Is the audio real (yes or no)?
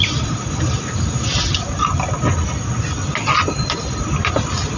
yes